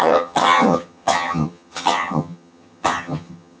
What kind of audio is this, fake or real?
fake